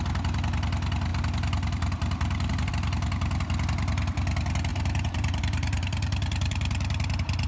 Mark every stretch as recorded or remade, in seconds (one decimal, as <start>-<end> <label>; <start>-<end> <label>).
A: 0.0-4.7 recorded; 4.7-7.5 remade